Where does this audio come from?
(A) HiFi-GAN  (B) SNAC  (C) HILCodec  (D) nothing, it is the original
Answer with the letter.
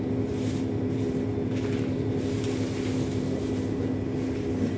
D